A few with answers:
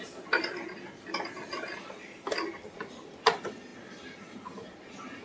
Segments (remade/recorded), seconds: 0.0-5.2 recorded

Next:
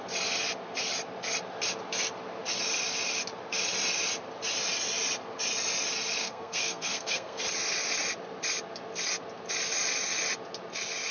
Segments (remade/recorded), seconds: 0.0-6.2 recorded; 6.2-7.4 remade; 7.4-11.1 recorded

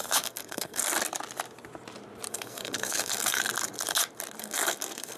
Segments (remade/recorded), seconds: 0.0-0.8 remade; 0.8-2.3 recorded; 2.3-3.4 remade; 3.4-4.4 recorded; 4.4-5.2 remade

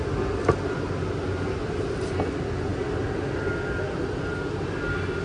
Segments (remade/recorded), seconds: 0.0-5.2 recorded

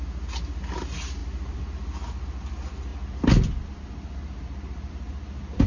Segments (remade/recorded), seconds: 0.0-5.7 recorded

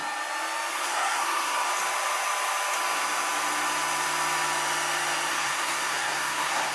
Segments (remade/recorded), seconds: 0.0-0.7 recorded; 0.7-1.7 remade; 1.7-5.3 recorded; 5.3-6.7 remade

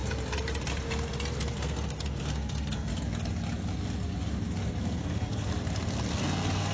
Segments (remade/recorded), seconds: 0.0-1.4 recorded; 1.4-2.9 remade; 2.9-4.8 recorded; 4.8-5.5 remade; 5.5-6.1 recorded; 6.1-6.7 remade